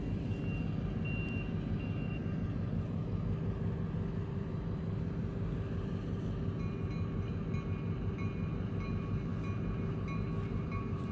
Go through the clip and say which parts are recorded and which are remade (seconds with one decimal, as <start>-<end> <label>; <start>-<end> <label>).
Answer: 0.0-11.1 recorded